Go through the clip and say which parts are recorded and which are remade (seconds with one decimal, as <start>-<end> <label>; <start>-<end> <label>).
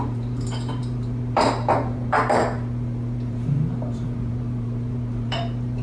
0.0-5.8 remade